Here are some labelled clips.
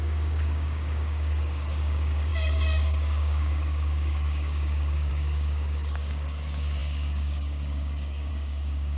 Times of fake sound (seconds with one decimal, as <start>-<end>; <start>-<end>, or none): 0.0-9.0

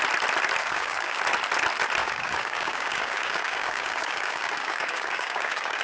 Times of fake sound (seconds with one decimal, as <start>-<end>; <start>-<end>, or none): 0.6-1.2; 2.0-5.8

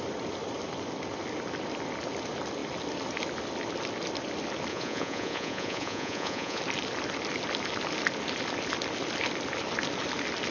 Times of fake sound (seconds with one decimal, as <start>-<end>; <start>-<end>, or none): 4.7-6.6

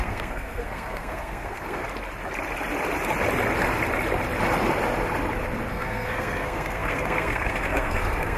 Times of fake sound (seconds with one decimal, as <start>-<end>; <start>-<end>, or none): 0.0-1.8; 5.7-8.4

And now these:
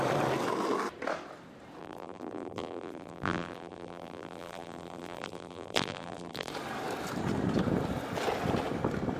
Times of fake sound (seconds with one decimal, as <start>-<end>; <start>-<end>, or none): 1.8-6.5